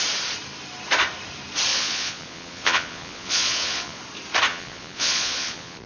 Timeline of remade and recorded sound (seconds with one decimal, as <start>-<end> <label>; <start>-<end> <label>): 0.0-1.7 recorded; 1.7-4.0 remade; 4.0-4.5 recorded; 4.5-5.9 remade